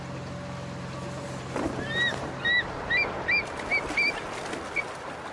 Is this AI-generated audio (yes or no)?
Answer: no